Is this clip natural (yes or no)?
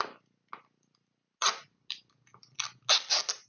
yes